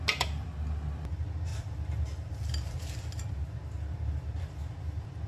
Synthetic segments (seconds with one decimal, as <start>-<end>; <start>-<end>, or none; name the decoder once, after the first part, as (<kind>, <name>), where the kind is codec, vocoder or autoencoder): none